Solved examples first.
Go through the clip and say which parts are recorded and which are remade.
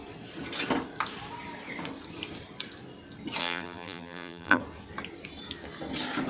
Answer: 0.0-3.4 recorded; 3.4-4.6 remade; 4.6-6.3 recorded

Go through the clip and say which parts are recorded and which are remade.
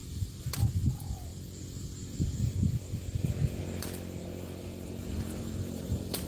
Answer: 0.0-0.5 remade; 0.5-4.2 recorded; 4.2-6.3 remade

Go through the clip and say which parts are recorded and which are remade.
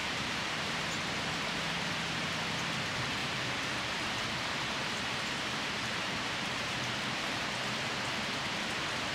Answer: 0.0-2.3 remade; 2.3-3.2 recorded; 3.2-7.7 remade; 7.7-9.1 recorded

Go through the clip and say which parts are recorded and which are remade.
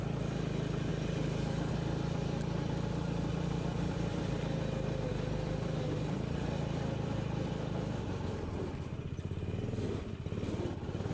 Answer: 0.0-3.3 recorded; 3.3-4.4 remade; 4.4-5.1 recorded; 5.1-7.5 remade; 7.5-11.1 recorded